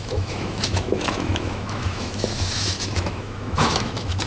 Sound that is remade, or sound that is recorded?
remade